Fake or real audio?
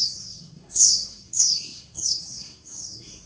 fake